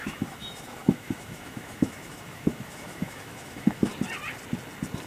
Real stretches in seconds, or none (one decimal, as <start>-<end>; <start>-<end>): 3.9-5.1